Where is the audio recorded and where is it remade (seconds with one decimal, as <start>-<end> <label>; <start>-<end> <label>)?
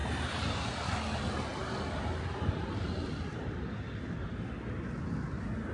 0.0-1.0 remade; 1.0-5.7 recorded